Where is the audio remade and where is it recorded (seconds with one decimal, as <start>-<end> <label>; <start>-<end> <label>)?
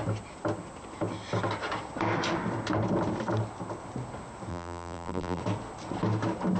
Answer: 0.0-4.5 recorded; 4.5-5.4 remade; 5.4-6.6 recorded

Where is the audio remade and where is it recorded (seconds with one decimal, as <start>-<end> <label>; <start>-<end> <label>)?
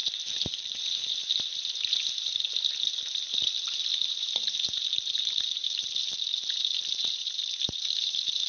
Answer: 0.0-0.8 remade; 0.8-3.9 recorded; 3.9-6.1 remade; 6.1-8.5 recorded